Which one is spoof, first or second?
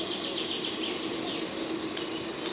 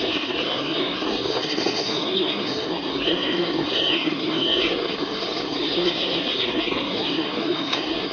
second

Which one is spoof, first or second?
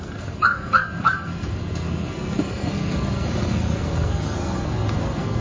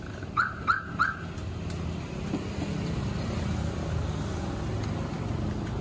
first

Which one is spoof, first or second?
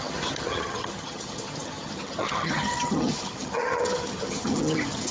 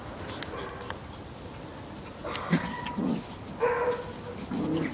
first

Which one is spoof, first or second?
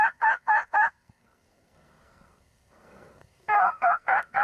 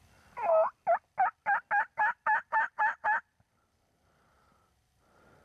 first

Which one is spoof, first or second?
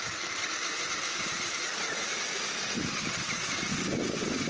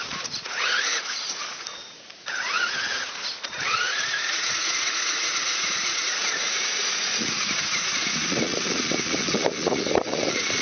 second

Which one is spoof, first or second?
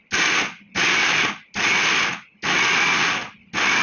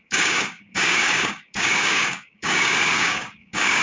second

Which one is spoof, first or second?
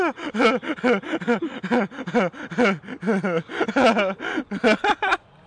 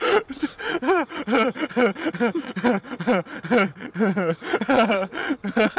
second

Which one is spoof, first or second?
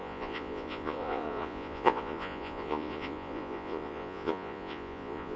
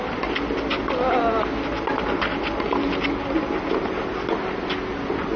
first